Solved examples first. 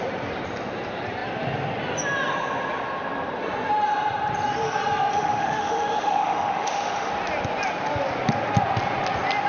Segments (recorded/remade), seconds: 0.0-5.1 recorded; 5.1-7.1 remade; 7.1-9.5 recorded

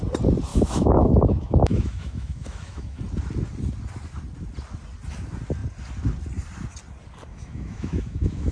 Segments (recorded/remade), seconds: 0.0-0.5 recorded; 0.5-3.0 remade; 3.0-7.3 recorded; 7.3-8.5 remade